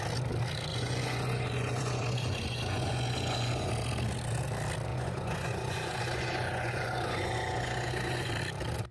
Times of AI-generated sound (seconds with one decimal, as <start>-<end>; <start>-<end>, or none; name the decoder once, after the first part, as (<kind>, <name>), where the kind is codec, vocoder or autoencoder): 0.7-3.7 (vocoder, Vocos); 4.9-8.3